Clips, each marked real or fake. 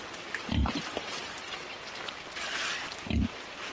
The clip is real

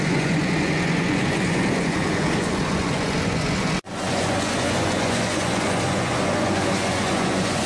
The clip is fake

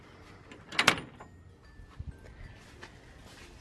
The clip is real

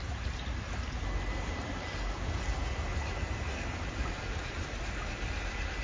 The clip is fake